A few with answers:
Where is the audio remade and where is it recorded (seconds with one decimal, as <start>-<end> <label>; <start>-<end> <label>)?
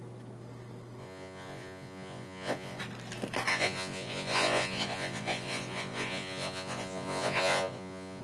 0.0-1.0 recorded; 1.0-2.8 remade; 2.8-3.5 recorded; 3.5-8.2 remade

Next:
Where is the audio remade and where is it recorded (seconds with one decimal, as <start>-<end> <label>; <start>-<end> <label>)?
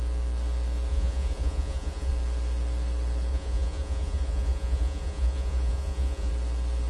0.0-0.9 recorded; 0.9-2.1 remade; 2.1-3.3 recorded; 3.3-6.3 remade; 6.3-6.9 recorded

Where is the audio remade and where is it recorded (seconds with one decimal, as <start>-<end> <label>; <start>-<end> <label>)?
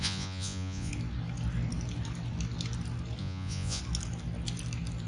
0.0-0.9 remade; 0.9-3.2 recorded; 3.2-3.8 remade; 3.8-5.1 recorded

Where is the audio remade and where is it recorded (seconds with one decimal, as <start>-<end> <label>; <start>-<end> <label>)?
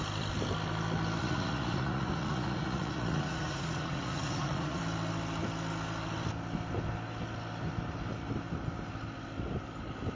0.0-1.2 recorded; 1.2-4.8 remade; 4.8-10.2 recorded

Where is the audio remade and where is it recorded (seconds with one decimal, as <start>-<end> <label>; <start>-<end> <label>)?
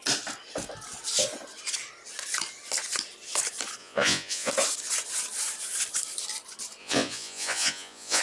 0.0-3.8 recorded; 3.8-4.5 remade; 4.5-6.8 recorded; 6.8-8.2 remade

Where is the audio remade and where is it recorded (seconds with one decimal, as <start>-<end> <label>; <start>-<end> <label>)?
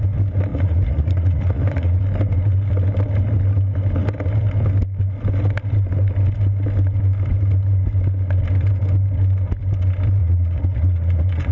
0.0-0.5 recorded; 0.5-2.0 remade; 2.0-10.2 recorded; 10.2-11.5 remade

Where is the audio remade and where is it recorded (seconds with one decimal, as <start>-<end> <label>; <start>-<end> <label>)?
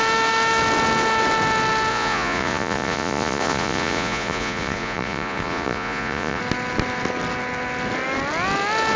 0.0-1.9 recorded; 1.9-6.4 remade; 6.4-9.0 recorded